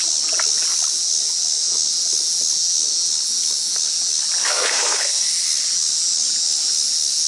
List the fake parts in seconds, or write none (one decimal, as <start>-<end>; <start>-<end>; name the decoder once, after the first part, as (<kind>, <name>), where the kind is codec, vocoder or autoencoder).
4.4-5.3 (codec, SNAC)